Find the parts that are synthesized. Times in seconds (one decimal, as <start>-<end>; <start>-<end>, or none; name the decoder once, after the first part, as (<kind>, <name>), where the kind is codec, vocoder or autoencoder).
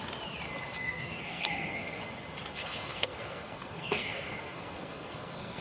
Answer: 0.8-2.0 (codec, SNAC); 2.5-5.6